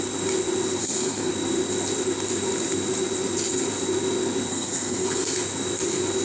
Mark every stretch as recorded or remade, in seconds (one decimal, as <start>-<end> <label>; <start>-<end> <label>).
0.0-0.8 recorded; 0.8-1.3 remade; 1.3-4.5 recorded; 4.5-5.4 remade; 5.4-6.2 recorded